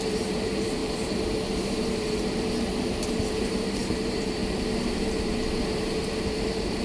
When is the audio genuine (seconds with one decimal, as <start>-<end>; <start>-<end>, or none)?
4.4-4.9